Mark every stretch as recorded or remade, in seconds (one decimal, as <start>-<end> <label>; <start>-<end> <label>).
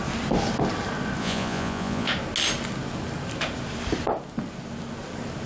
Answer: 0.0-1.2 recorded; 1.2-2.1 remade; 2.1-5.5 recorded